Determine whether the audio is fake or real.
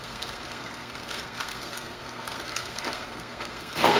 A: fake